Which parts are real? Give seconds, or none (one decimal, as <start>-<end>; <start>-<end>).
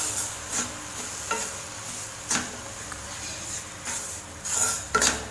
0.0-5.3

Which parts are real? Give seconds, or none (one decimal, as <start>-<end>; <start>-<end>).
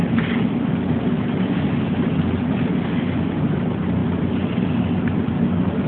0.0-5.9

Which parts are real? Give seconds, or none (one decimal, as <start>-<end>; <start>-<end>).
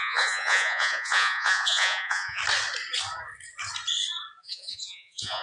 2.4-4.4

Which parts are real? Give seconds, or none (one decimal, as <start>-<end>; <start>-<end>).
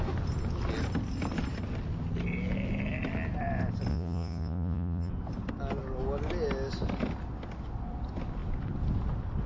0.0-3.9; 5.1-9.5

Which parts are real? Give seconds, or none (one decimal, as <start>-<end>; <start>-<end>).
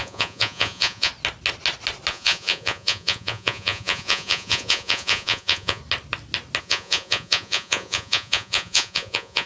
1.1-2.1; 5.8-6.6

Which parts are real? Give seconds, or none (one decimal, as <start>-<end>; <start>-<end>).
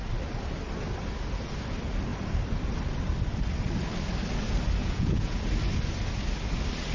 0.0-4.8; 5.4-6.9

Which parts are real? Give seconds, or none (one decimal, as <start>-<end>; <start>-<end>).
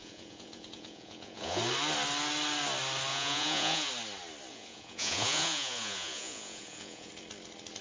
1.6-3.1; 3.9-4.5; 7.1-7.8